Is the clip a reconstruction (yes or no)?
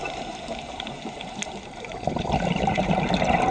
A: yes